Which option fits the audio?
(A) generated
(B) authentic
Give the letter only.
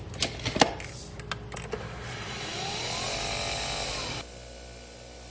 B